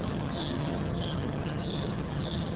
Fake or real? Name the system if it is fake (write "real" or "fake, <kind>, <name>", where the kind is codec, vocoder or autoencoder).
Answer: fake, vocoder, HiFi-GAN